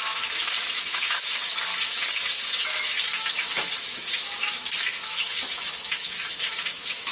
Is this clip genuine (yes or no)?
no